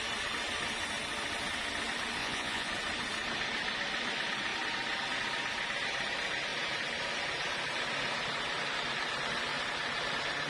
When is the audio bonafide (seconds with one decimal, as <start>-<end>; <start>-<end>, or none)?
0.0-2.2; 2.7-10.5